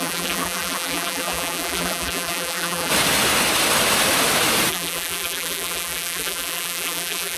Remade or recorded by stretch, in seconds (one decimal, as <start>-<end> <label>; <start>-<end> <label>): 0.0-2.9 remade; 2.9-4.7 recorded; 4.7-7.4 remade